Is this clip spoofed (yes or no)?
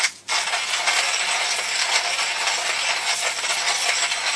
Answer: no